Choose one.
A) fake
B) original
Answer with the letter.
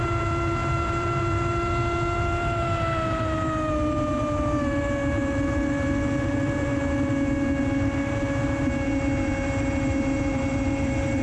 A